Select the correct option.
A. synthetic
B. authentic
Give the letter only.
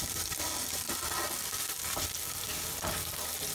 B